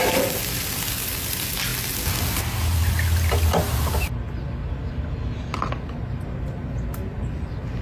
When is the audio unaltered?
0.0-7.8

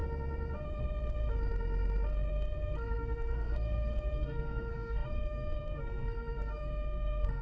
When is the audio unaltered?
0.0-2.3

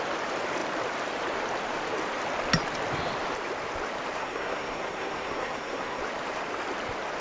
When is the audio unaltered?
0.0-4.2; 6.0-7.2

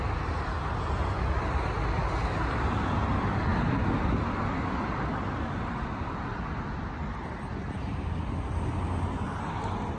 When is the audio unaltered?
0.0-10.0

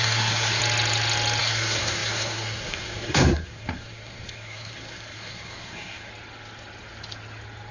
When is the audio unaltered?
0.6-1.4; 6.1-7.7

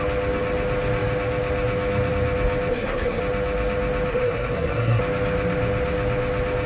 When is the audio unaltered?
0.0-2.7; 3.2-4.1; 5.0-6.7

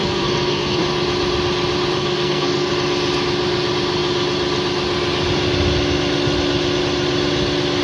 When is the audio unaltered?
0.8-2.0; 2.7-7.8